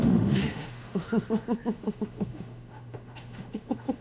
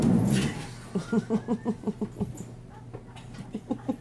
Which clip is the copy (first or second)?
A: first